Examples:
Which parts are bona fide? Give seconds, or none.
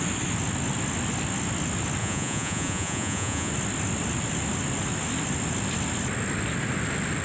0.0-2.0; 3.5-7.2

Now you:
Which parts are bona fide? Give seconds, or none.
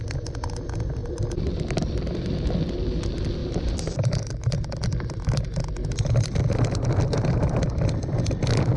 0.0-1.0; 1.9-3.4; 5.5-8.8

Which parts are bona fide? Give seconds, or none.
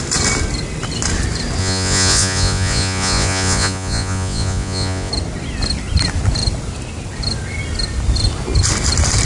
0.0-1.6; 5.1-9.3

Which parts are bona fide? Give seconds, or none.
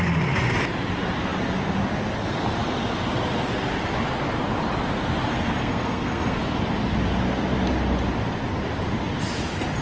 0.0-5.3; 6.4-9.8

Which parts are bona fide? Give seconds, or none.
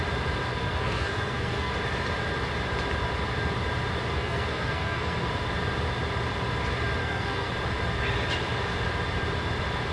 0.0-0.5; 1.7-4.1; 5.3-7.0; 7.5-9.9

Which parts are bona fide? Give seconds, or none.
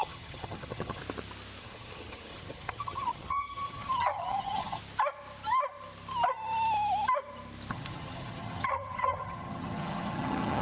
1.0-1.6; 4.8-7.7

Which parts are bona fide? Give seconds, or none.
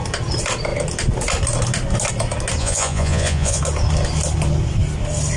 0.0-2.6; 3.6-5.4